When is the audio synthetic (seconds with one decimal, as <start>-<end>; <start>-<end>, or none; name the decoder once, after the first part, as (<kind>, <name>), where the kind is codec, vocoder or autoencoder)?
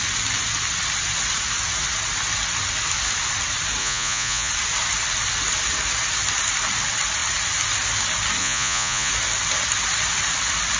3.8-4.5 (vocoder, Vocos); 8.4-9.1